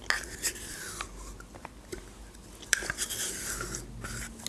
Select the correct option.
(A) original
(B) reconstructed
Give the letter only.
A